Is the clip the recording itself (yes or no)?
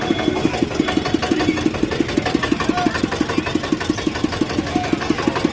yes